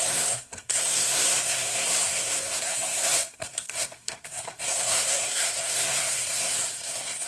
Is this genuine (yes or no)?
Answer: no